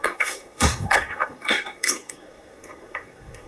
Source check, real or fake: fake